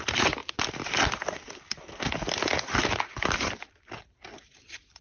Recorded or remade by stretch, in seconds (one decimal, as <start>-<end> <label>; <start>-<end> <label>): 0.0-5.0 recorded